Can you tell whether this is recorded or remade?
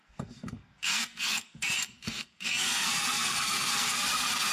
remade